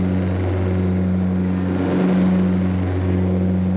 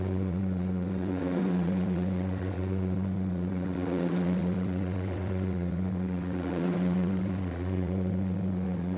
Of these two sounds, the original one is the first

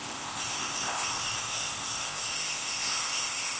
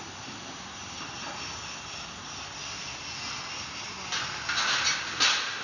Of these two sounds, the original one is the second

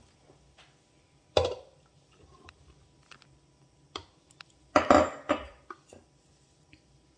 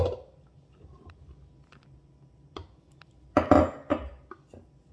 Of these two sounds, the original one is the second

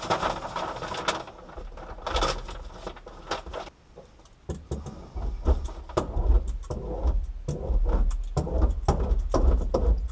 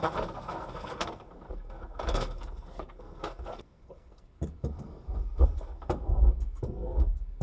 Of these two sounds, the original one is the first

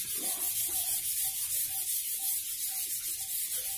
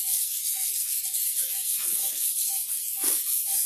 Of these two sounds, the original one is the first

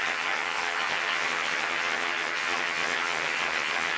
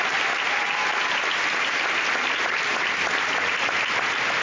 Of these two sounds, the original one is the second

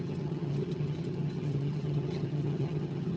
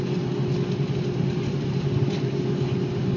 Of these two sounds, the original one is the second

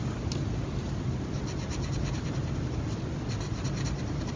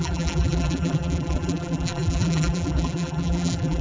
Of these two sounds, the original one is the first